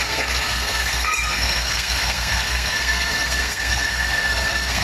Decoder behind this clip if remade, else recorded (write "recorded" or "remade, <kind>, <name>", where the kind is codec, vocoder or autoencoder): remade, codec, SNAC